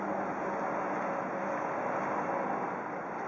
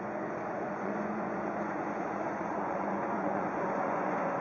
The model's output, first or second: second